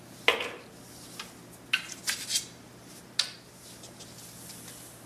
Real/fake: real